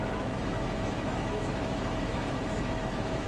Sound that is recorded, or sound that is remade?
remade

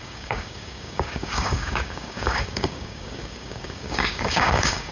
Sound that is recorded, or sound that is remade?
remade